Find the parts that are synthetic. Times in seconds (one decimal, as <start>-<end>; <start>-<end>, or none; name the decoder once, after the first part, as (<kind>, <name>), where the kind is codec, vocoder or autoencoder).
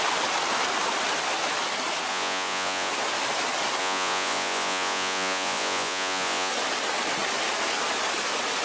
2.1-2.9 (vocoder, Vocos); 3.8-6.5